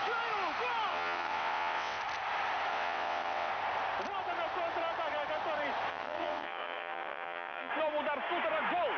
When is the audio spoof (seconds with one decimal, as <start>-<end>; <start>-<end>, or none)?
0.9-2.0; 2.7-3.5; 5.9-7.7